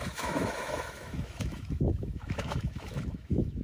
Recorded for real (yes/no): no